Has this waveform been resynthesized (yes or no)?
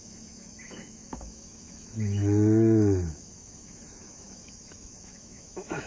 yes